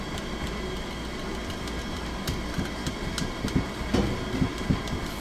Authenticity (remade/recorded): recorded